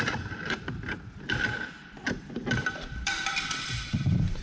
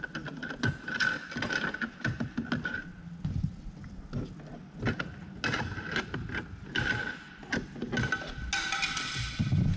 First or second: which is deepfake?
first